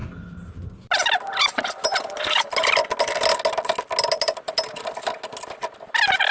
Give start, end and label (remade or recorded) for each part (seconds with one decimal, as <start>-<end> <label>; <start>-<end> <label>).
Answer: 0.0-6.3 recorded

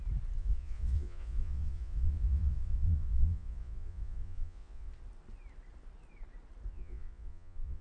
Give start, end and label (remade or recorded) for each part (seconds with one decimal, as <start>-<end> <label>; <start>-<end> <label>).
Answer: 0.0-0.4 recorded; 0.4-4.9 remade; 4.9-6.7 recorded; 6.7-7.8 remade

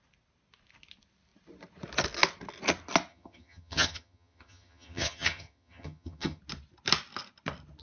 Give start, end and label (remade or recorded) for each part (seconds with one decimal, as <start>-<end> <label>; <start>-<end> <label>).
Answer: 0.0-3.1 recorded; 3.1-6.4 remade; 6.4-7.8 recorded

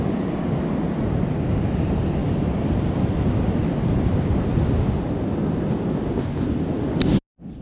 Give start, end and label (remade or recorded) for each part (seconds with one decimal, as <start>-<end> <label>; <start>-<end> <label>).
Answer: 0.0-7.6 recorded

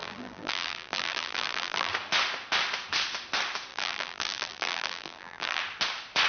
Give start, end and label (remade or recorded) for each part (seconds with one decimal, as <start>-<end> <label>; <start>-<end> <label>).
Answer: 0.0-1.9 remade; 1.9-3.7 recorded; 3.7-5.6 remade; 5.6-6.3 recorded

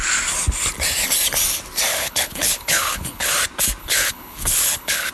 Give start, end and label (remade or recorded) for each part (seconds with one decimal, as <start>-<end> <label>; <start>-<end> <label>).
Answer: 0.0-1.9 recorded; 1.9-3.3 remade; 3.3-3.8 recorded; 3.8-5.1 remade

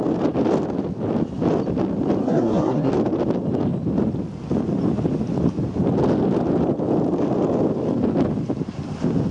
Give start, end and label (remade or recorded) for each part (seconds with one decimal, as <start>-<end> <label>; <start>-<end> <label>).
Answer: 0.0-2.2 recorded; 2.2-2.9 remade; 2.9-9.3 recorded

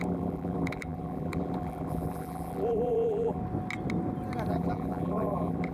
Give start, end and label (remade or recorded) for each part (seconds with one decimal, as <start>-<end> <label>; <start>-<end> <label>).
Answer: 0.0-3.4 remade; 3.4-4.5 recorded; 4.5-5.7 remade